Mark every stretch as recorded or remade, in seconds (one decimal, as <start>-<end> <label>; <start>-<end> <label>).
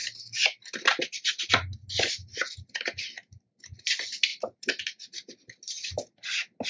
0.0-6.7 recorded